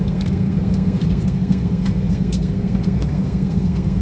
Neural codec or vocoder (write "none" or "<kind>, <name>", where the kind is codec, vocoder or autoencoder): codec, SNAC